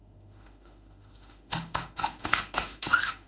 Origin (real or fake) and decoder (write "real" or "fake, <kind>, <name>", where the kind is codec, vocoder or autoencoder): fake, autoencoder, DAC-VAE